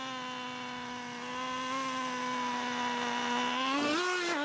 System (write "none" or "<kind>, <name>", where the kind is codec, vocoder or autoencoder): none